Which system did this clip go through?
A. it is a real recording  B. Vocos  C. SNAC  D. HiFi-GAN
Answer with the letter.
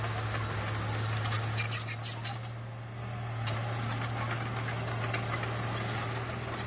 A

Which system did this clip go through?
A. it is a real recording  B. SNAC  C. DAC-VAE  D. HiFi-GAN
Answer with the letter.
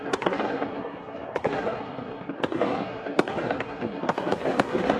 B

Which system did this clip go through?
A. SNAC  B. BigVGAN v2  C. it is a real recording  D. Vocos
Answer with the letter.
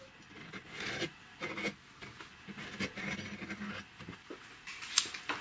C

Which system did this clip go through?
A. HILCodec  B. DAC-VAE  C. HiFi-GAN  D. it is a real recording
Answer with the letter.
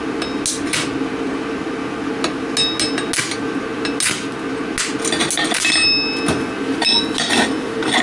D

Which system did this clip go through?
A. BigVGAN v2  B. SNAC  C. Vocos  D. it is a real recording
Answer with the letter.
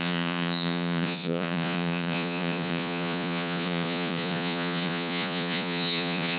C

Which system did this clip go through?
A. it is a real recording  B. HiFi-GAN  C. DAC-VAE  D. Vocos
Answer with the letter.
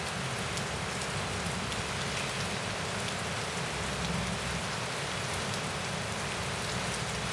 A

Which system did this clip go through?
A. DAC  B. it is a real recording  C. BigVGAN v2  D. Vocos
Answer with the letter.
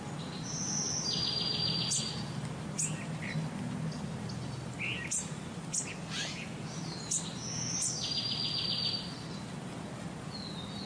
B